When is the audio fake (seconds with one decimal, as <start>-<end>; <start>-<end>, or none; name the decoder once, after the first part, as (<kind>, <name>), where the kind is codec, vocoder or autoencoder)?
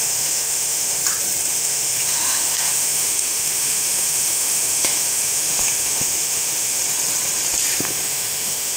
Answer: 0.0-1.0 (autoencoder, DAC-VAE); 1.5-6.8; 7.8-8.8